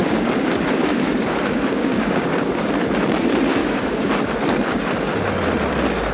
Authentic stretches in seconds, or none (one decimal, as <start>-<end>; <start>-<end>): 2.7-3.6; 4.1-6.1